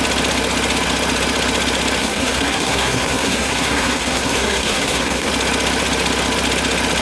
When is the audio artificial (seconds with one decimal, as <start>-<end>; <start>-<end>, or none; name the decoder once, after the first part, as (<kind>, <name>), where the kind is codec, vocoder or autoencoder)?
2.0-5.3 (codec, SNAC)